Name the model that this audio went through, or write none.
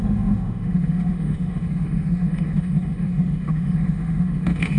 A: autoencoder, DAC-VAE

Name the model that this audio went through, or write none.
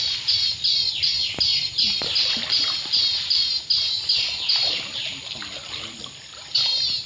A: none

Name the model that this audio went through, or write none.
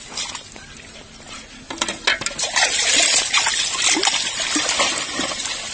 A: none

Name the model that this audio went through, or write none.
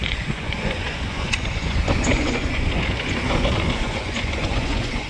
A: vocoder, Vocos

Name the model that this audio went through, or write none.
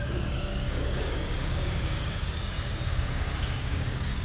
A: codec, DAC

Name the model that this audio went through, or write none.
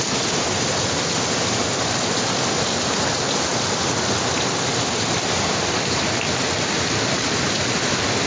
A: none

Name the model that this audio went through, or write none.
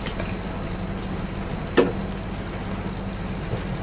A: none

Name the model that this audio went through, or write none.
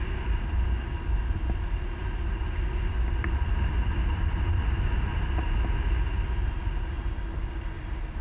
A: none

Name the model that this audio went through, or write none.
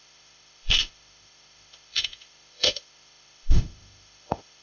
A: autoencoder, DAC-VAE